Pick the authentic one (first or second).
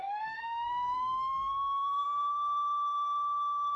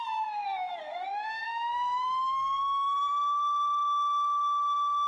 second